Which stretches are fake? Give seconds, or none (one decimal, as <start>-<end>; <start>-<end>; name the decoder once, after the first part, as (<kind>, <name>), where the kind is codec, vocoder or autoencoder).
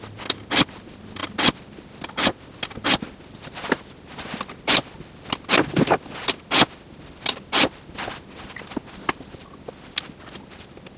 none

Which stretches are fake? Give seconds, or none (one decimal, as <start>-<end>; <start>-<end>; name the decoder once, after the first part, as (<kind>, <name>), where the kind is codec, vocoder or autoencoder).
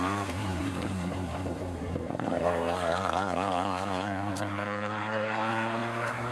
0.0-6.3 (codec, SNAC)